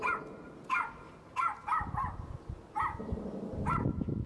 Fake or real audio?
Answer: real